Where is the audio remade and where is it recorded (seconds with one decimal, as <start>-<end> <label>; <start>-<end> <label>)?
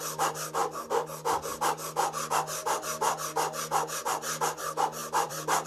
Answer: 0.0-5.0 recorded; 5.0-5.7 remade